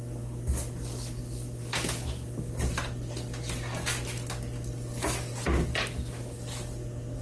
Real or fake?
real